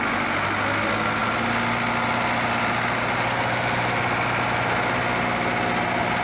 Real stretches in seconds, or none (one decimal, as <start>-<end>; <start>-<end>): 0.0-6.2